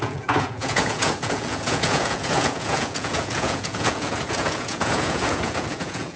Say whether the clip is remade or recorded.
remade